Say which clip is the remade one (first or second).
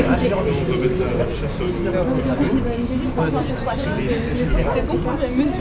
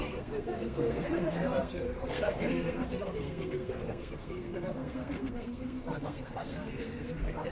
second